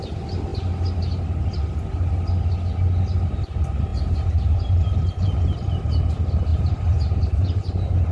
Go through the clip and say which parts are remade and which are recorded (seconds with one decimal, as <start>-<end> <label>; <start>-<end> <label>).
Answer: 0.0-3.9 recorded; 3.9-5.9 remade; 5.9-6.5 recorded; 6.5-8.1 remade